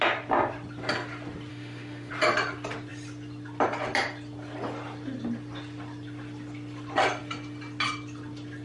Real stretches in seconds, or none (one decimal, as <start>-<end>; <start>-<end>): 0.0-1.5; 2.1-8.6